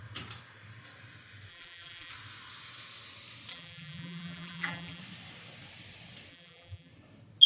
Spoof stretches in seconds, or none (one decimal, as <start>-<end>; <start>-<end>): 1.5-2.1; 3.5-5.0; 6.3-6.9